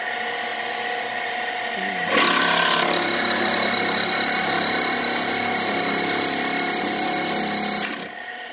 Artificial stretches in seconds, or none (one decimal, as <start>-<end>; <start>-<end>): none

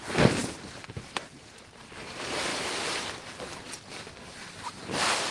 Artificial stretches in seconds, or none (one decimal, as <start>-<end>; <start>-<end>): none

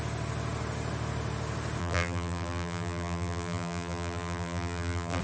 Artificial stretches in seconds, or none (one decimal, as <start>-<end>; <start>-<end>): 1.8-5.2

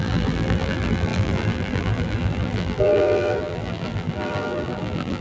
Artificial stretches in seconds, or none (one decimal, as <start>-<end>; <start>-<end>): 0.0-5.2